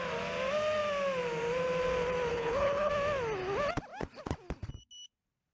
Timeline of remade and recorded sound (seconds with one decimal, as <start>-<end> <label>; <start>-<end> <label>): 0.0-2.3 recorded; 2.3-2.9 remade; 2.9-5.5 recorded